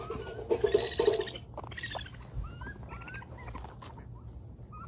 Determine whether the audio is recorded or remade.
recorded